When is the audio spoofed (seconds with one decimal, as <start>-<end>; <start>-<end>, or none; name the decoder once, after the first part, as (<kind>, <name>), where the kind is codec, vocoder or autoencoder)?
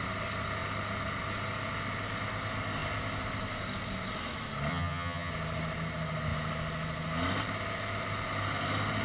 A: 4.7-5.3 (vocoder, HiFi-GAN)